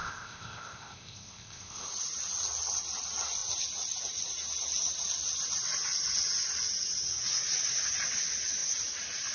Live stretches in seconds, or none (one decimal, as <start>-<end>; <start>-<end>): 1.9-9.3